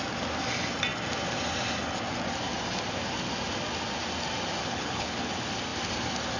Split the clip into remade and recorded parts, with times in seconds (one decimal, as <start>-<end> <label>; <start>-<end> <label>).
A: 0.0-4.6 recorded; 4.6-5.3 remade; 5.3-6.4 recorded